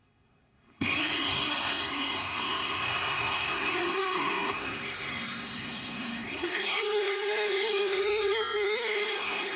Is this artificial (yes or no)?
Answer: yes